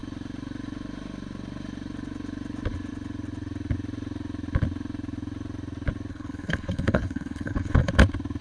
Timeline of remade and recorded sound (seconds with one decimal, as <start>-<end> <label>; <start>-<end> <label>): 0.0-6.1 recorded; 6.1-7.9 remade; 7.9-8.4 recorded